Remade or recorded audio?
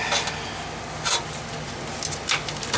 recorded